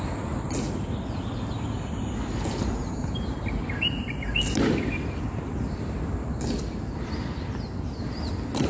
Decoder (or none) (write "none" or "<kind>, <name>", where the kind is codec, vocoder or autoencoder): none